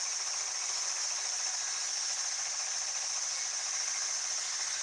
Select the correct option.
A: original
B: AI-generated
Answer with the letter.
A